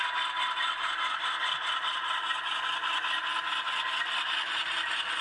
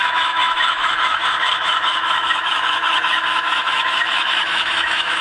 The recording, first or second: first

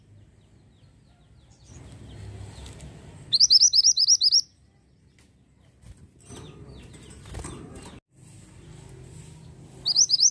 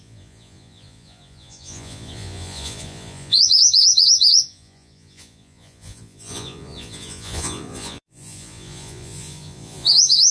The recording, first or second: first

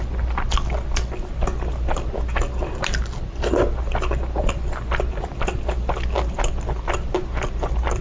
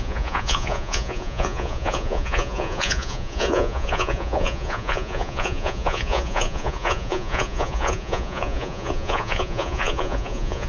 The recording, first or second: first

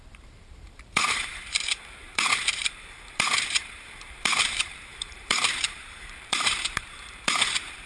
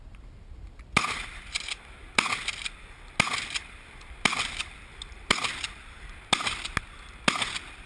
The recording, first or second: second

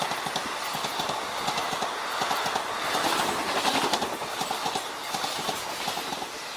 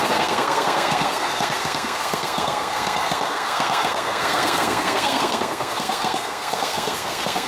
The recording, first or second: first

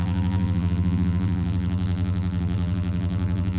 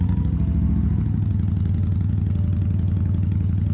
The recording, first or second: second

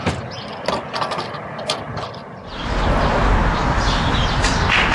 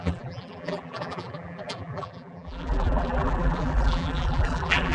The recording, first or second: first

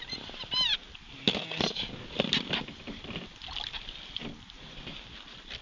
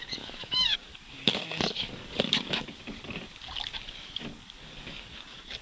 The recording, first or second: first